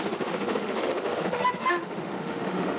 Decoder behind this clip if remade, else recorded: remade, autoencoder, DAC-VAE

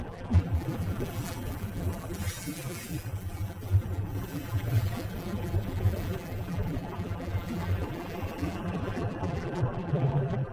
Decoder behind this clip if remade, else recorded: remade, vocoder, BigVGAN v2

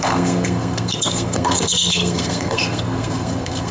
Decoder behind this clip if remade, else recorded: remade, codec, SNAC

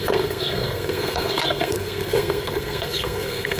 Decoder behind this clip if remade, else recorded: remade, codec, SNAC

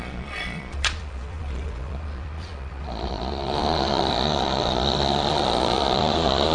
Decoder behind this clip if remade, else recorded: remade, vocoder, Vocos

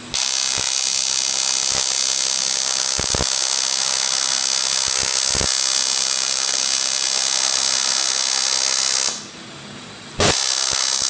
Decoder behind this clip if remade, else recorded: recorded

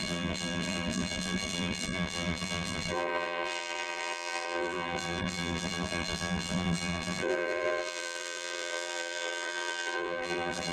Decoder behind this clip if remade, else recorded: remade, vocoder, BigVGAN v2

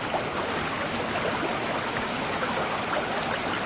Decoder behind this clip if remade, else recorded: recorded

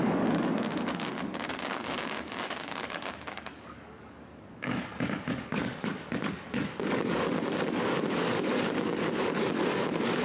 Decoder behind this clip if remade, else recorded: remade, codec, DAC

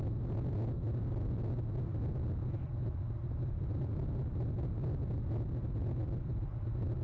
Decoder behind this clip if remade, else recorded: recorded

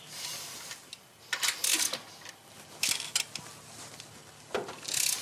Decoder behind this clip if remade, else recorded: recorded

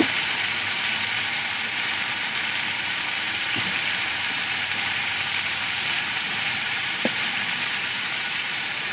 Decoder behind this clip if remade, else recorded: remade, vocoder, BigVGAN v2